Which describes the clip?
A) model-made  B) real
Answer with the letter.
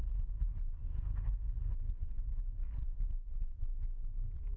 A